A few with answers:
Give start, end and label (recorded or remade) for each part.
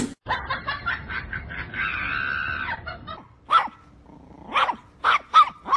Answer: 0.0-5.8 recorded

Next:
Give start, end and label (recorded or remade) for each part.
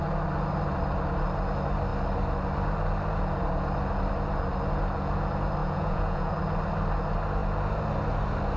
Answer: 0.0-5.6 recorded; 5.6-6.3 remade; 6.3-8.6 recorded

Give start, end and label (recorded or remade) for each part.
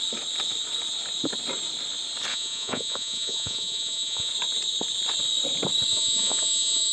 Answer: 0.0-2.3 recorded; 2.3-4.3 remade; 4.3-5.9 recorded; 5.9-6.9 remade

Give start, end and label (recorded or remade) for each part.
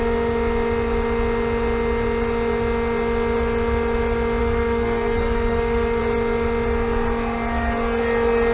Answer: 0.0-4.4 recorded; 4.4-6.0 remade; 6.0-8.5 recorded